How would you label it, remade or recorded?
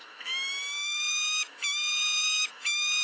remade